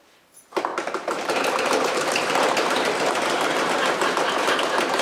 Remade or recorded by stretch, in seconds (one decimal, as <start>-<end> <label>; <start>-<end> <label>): 0.0-0.7 recorded; 0.7-3.7 remade; 3.7-5.0 recorded